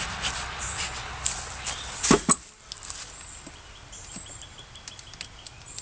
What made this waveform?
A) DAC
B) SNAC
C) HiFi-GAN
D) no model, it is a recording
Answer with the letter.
D